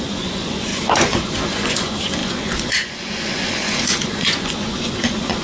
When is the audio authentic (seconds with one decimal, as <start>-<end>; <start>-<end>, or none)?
none